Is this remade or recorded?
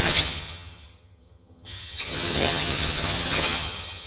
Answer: remade